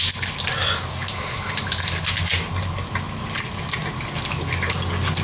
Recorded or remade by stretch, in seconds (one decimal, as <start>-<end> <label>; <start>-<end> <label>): 0.0-5.2 recorded